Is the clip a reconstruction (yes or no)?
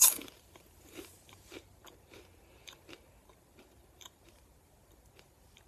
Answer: yes